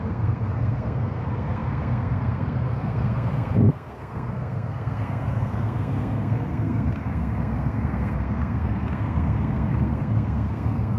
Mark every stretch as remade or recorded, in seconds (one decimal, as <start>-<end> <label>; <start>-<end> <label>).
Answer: 0.0-11.0 remade